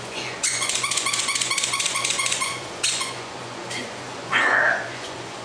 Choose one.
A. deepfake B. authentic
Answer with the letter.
A